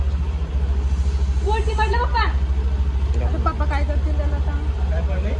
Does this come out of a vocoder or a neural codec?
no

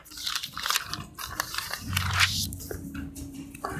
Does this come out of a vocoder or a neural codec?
yes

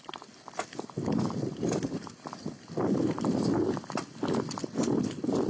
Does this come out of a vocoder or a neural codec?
no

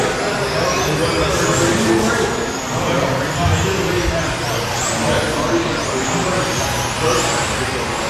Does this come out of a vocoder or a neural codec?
no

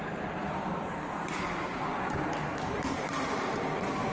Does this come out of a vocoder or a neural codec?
no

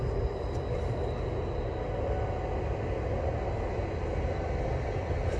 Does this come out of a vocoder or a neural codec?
no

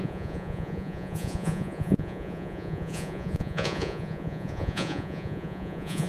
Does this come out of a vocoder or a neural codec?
yes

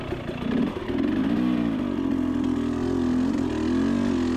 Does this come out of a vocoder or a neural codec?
no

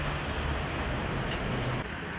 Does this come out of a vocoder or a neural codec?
no